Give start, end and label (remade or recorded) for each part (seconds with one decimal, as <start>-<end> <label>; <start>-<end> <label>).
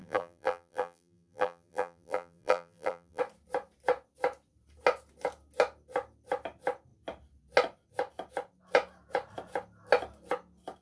0.0-3.2 remade; 3.2-10.8 recorded